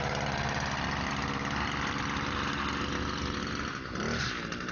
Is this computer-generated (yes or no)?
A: no